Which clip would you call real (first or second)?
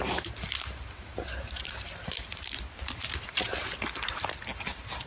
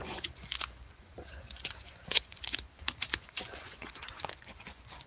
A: first